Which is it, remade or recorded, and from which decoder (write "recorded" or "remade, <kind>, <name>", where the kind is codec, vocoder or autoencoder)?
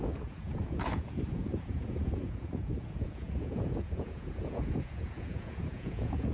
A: remade, vocoder, Vocos